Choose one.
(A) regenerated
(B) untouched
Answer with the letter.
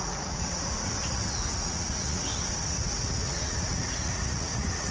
A